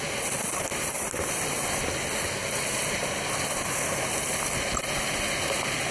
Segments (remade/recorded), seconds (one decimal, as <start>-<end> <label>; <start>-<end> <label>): 0.0-5.9 recorded